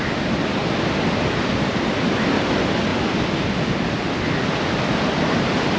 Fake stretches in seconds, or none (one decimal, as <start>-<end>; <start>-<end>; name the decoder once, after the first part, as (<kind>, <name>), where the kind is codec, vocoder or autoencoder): none

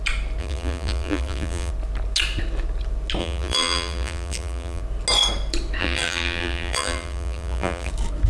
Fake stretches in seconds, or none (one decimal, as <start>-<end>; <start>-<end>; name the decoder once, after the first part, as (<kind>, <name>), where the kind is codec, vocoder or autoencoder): 0.4-1.7 (vocoder, BigVGAN v2); 3.2-4.8; 5.8-7.9

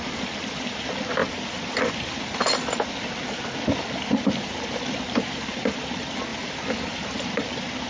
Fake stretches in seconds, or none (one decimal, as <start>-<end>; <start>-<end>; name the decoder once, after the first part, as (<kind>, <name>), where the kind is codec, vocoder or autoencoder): 0.0-1.2 (vocoder, BigVGAN v2); 4.6-6.3; 6.8-7.9

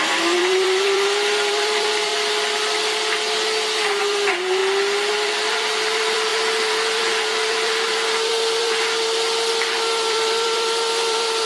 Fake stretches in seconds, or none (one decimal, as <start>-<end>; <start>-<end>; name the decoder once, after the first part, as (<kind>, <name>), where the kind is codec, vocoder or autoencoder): 0.0-2.1 (vocoder, BigVGAN v2); 4.0-4.6; 5.1-11.5